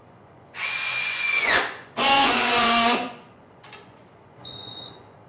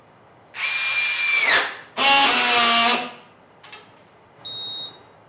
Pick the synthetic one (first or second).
first